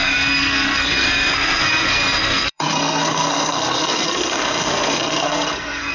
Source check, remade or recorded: remade